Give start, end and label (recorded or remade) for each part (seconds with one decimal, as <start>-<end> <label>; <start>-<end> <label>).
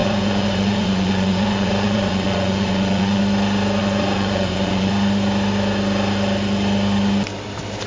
0.0-3.2 remade; 3.2-3.8 recorded; 3.8-4.9 remade; 4.9-7.9 recorded